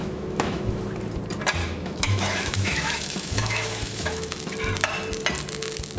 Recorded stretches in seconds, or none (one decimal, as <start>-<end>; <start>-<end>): 0.8-1.6; 4.4-6.0